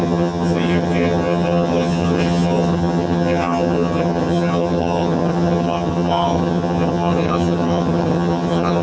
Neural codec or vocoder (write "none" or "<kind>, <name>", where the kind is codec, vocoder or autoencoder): vocoder, HiFi-GAN